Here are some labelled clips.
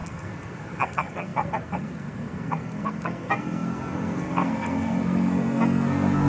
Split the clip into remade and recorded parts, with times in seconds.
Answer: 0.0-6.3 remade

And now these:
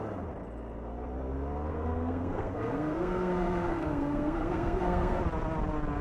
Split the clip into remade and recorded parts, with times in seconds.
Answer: 0.0-1.7 recorded; 1.7-5.2 remade; 5.2-6.0 recorded

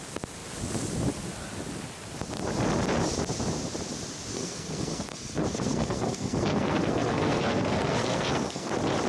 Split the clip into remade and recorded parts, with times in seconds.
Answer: 0.0-4.3 recorded; 4.3-8.7 remade; 8.7-9.1 recorded

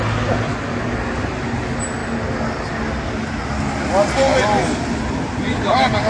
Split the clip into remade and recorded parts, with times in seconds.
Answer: 0.0-6.1 recorded